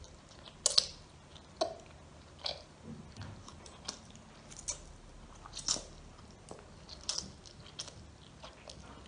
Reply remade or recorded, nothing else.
recorded